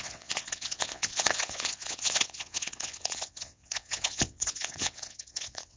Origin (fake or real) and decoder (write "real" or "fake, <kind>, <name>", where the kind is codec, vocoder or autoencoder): fake, vocoder, WaveNeXt